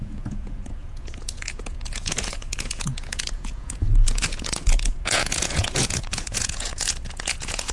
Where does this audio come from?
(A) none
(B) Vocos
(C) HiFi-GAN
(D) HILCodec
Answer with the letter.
B